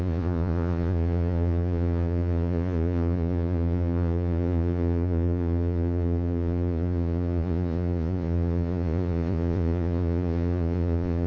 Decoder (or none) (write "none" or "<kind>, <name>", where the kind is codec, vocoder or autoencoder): vocoder, Vocos